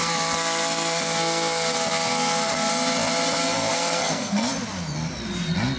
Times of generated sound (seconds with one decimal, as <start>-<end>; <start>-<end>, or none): 0.0-2.7; 3.4-4.5